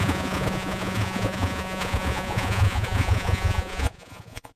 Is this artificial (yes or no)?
yes